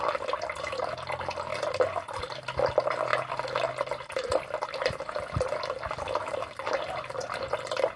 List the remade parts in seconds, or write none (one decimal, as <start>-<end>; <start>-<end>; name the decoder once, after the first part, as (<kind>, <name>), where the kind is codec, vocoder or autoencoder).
none